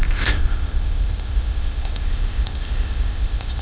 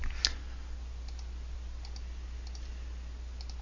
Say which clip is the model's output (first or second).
first